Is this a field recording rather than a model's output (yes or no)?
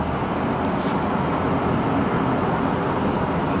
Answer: yes